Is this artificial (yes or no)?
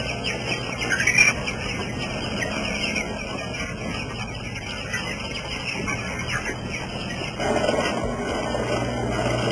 no